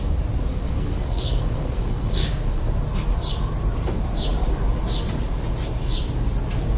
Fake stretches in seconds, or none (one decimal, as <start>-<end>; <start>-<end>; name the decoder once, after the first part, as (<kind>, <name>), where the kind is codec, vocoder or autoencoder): 0.5-2.6 (codec, SNAC)